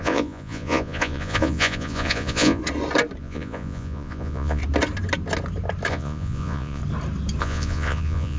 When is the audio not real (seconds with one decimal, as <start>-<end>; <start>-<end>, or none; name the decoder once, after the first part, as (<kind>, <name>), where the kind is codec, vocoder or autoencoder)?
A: 0.0-2.6 (vocoder, Vocos); 3.2-4.6; 5.9-6.8; 7.4-8.4